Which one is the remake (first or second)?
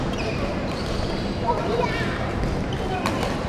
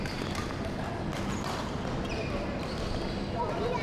first